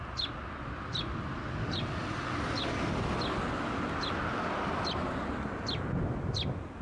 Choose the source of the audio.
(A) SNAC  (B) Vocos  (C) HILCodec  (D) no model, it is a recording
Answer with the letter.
D